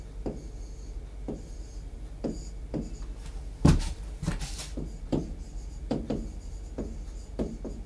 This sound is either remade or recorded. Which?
recorded